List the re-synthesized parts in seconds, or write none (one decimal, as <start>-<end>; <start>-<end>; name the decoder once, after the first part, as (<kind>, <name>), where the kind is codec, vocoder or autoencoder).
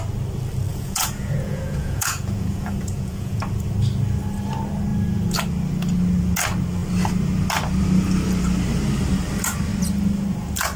0.7-3.4 (vocoder, Vocos)